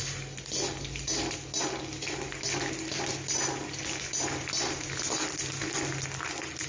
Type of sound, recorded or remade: recorded